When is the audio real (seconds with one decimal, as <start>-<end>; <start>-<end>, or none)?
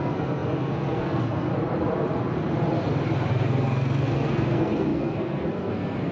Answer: 1.5-3.3